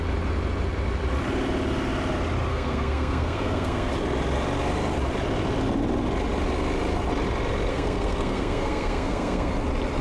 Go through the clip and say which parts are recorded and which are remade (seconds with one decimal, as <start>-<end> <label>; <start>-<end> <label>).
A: 0.0-2.5 recorded; 2.5-3.9 remade; 3.9-7.7 recorded; 7.7-9.5 remade; 9.5-10.0 recorded